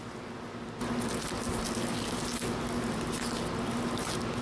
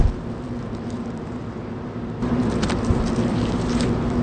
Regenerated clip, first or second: second